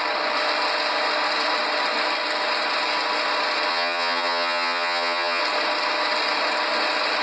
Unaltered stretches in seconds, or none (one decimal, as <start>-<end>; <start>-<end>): 0.0-3.7; 5.4-7.2